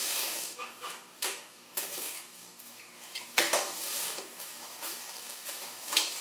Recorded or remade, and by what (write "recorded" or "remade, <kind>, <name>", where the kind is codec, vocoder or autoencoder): remade, codec, DAC